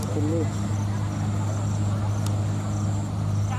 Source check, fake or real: real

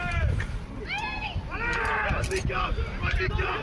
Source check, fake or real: real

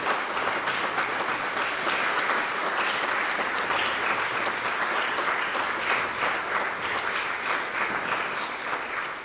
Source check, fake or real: real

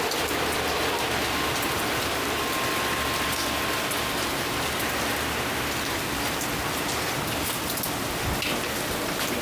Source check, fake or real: fake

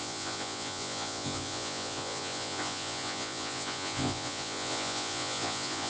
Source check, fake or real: fake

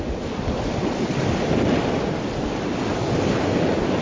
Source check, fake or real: real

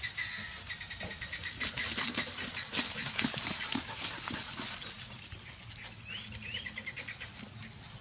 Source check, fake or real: real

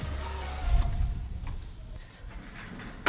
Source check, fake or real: real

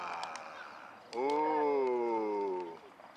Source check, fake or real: real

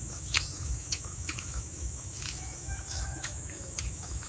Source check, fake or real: fake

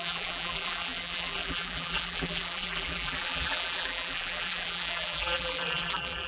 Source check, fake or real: fake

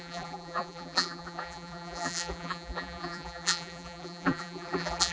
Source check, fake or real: fake